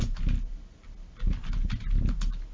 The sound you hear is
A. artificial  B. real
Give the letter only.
B